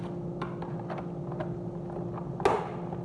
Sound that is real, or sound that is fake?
real